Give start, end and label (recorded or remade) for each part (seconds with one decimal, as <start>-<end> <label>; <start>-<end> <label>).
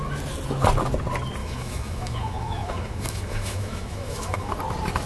0.0-1.4 recorded; 1.4-4.5 remade; 4.5-5.1 recorded